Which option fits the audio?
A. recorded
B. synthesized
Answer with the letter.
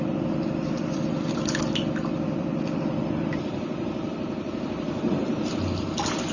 B